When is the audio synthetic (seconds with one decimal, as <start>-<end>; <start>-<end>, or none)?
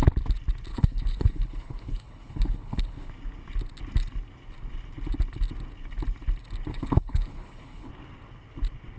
0.7-3.1; 6.7-7.9